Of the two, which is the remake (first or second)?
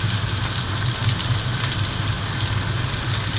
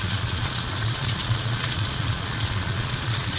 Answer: second